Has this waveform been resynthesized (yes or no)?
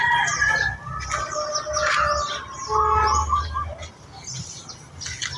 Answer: no